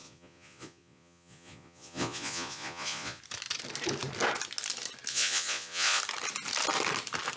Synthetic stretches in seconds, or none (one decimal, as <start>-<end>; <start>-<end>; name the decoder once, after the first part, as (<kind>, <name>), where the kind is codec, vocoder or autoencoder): 0.0-3.2 (vocoder, Vocos); 5.1-6.0